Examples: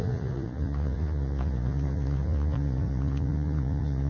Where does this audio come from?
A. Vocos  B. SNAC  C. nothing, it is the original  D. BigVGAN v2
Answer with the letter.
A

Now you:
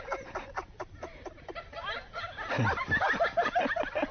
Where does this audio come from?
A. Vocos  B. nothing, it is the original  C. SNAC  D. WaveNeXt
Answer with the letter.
B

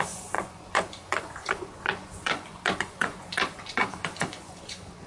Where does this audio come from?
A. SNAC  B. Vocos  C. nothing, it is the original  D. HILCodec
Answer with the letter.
B